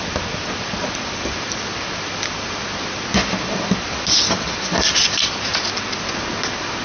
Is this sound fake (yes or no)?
no